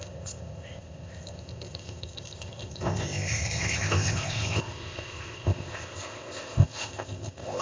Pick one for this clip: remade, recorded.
remade